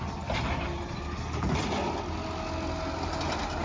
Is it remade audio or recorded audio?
recorded